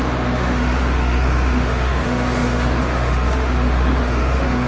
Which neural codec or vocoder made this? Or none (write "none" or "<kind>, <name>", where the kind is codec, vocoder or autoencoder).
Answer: autoencoder, DAC-VAE